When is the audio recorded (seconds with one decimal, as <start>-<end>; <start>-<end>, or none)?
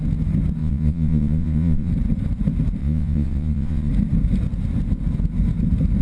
0.0-0.6; 1.9-2.8; 3.9-6.0